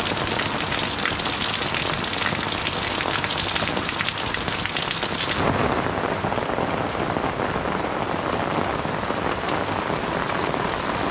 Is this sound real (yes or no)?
yes